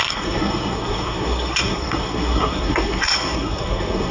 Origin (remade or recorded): remade